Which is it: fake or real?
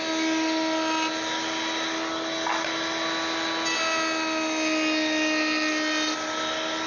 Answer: real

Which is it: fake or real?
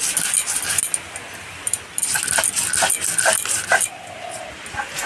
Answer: real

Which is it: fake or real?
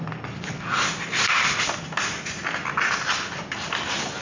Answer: real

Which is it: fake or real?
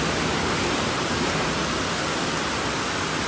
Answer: real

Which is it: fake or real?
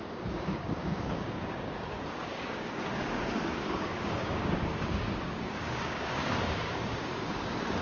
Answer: fake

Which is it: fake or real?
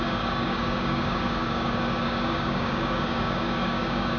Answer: fake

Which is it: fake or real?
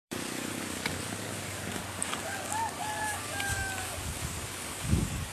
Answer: fake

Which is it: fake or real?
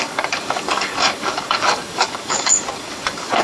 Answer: fake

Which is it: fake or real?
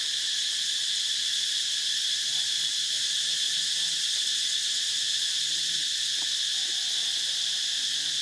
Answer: real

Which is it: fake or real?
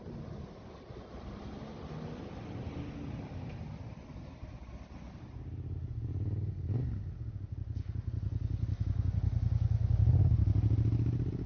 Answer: real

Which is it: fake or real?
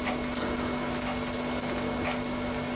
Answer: real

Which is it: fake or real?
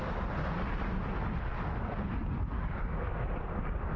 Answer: real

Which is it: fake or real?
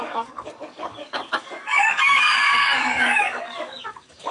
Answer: fake